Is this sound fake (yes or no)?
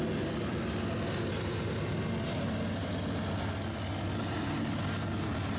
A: no